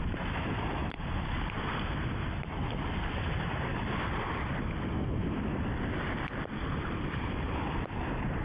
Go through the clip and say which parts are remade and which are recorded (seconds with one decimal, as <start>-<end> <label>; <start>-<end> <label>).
0.0-0.8 recorded; 0.8-2.0 remade; 2.0-8.4 recorded

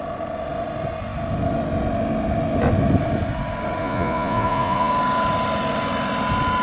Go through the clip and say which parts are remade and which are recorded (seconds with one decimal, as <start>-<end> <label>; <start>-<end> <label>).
0.0-3.8 recorded; 3.8-4.9 remade; 4.9-6.6 recorded